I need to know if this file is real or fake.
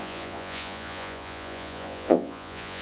fake